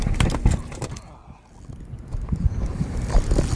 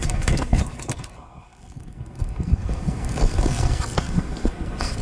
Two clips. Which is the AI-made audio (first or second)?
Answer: second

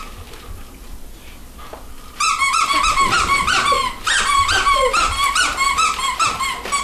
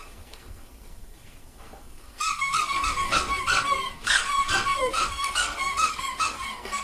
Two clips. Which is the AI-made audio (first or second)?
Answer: second